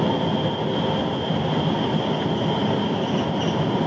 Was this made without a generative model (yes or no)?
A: yes